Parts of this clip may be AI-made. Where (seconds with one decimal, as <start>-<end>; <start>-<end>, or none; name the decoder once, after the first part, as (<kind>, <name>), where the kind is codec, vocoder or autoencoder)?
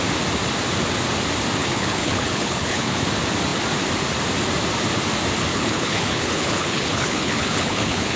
1.6-3.0 (codec, HILCodec); 5.5-8.2